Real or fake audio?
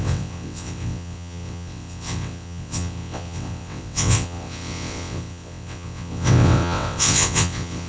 fake